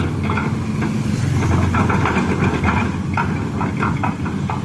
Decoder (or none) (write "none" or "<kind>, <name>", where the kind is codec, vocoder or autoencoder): none